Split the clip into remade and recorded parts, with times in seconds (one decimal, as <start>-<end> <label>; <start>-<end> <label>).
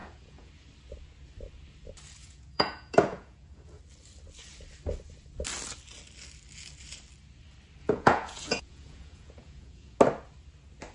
0.0-0.5 remade; 0.5-2.2 recorded; 2.2-3.8 remade; 3.8-7.8 recorded; 7.8-10.0 remade; 10.0-10.9 recorded